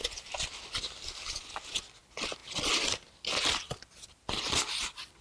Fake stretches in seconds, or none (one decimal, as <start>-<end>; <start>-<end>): none